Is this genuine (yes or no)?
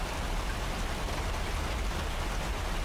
yes